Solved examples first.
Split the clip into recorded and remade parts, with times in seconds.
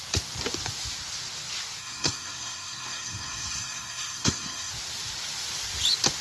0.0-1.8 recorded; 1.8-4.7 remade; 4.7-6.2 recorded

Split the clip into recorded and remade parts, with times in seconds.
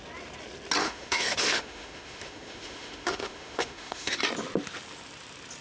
0.0-0.8 recorded; 0.8-4.2 remade; 4.2-5.6 recorded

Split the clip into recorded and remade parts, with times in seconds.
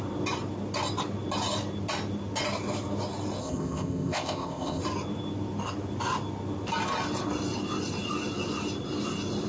0.0-3.4 recorded; 3.4-4.8 remade; 4.8-9.5 recorded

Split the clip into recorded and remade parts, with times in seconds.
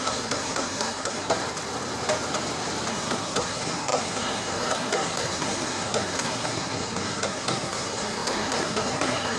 0.0-1.4 remade; 1.4-2.9 recorded; 2.9-9.4 remade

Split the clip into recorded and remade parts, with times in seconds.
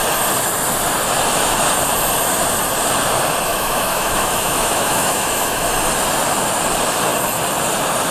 0.0-3.5 recorded; 3.5-5.7 remade; 5.7-8.1 recorded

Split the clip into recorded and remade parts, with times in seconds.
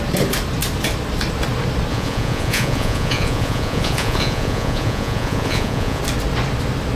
0.0-1.9 recorded; 1.9-6.0 remade; 6.0-6.9 recorded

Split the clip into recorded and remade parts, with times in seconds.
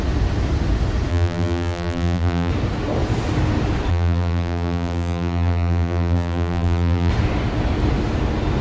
0.0-1.1 recorded; 1.1-2.5 remade; 2.5-3.9 recorded; 3.9-7.1 remade; 7.1-8.6 recorded